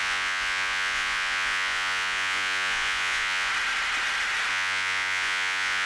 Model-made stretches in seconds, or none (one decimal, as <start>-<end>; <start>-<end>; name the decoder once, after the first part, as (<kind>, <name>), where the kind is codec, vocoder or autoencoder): 0.0-3.5 (vocoder, Vocos); 4.5-5.9